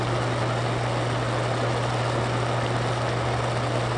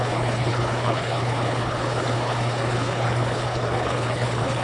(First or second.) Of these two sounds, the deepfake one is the second